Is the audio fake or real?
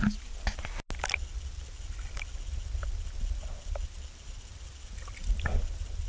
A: real